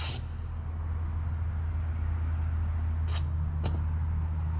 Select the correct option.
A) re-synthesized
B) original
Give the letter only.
B